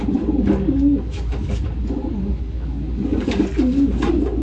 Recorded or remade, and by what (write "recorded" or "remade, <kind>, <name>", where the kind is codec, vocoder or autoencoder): remade, codec, DAC